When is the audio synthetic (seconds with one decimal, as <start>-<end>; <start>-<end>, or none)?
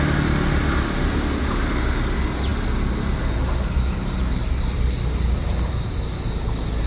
none